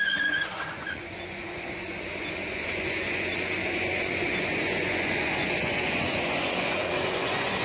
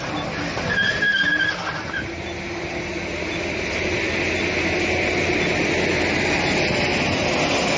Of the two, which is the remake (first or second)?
first